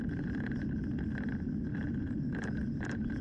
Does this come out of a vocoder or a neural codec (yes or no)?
no